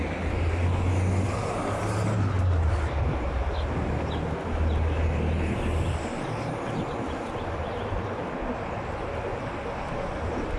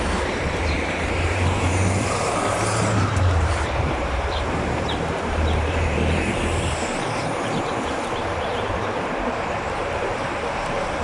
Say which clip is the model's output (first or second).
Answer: second